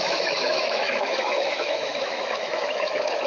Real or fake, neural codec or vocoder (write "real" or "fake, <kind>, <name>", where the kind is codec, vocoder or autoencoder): fake, autoencoder, DAC-VAE